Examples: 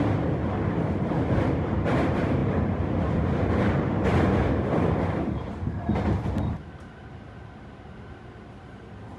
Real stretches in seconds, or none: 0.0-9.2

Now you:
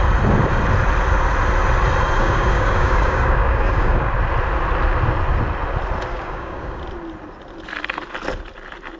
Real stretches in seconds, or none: 0.0-2.2; 4.1-6.1; 6.8-9.0

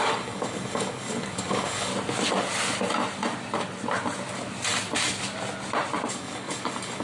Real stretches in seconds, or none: 1.9-6.1

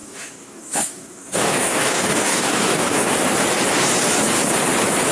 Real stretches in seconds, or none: 3.1-5.1

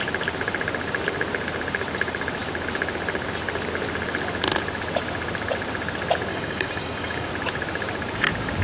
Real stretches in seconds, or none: 0.0-6.3; 7.3-8.6

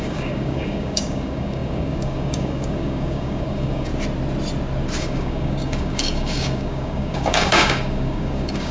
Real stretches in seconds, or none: 3.9-5.0